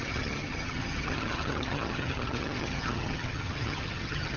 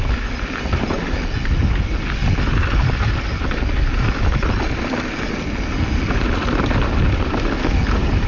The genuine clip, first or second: second